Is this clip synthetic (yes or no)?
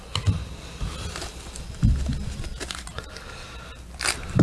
no